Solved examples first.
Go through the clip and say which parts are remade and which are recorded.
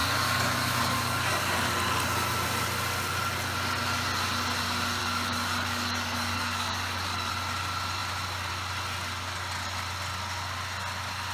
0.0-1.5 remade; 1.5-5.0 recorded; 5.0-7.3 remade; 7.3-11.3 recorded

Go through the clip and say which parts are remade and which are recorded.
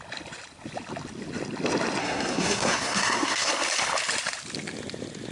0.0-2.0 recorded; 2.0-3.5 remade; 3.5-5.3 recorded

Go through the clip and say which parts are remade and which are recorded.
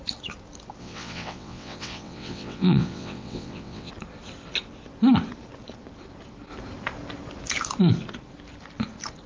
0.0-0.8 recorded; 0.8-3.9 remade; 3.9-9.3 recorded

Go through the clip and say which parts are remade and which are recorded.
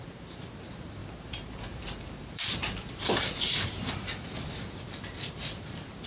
0.0-6.1 remade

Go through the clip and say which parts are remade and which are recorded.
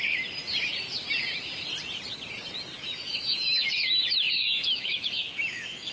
0.0-2.7 recorded; 2.7-5.9 remade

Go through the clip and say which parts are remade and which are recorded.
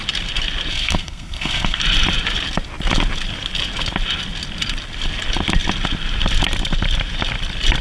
0.0-0.7 recorded; 0.7-1.8 remade; 1.8-7.8 recorded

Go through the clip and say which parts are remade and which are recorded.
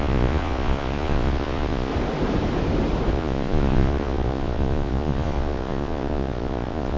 0.0-1.9 remade; 1.9-3.1 recorded; 3.1-7.0 remade